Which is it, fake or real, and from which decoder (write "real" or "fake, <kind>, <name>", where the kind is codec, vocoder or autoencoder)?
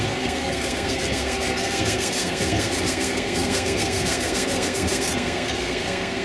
fake, codec, SNAC